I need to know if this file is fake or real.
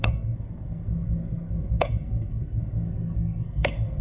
fake